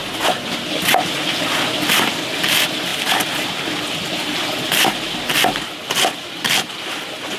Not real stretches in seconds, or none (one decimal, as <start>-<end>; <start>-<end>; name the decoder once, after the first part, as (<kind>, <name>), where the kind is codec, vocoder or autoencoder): none